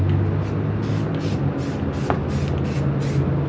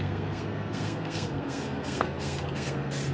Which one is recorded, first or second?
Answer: first